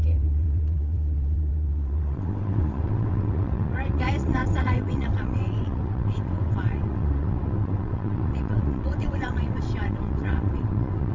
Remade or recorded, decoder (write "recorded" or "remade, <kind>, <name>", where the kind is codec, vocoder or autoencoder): remade, vocoder, WaveNeXt